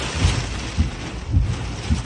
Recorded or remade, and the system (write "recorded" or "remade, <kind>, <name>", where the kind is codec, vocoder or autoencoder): recorded